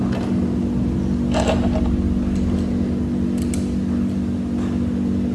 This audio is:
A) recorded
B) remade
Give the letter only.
A